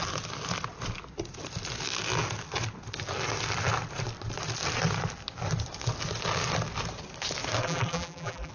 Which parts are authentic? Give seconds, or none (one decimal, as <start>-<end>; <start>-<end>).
0.0-7.6